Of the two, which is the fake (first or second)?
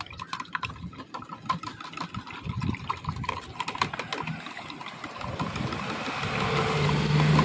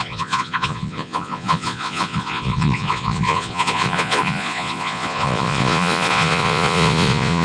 second